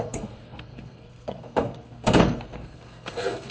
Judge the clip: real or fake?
fake